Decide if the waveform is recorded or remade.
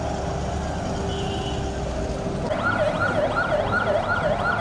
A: recorded